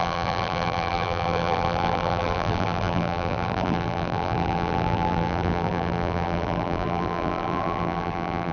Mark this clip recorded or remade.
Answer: remade